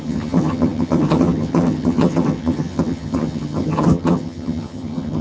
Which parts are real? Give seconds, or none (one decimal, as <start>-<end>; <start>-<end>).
none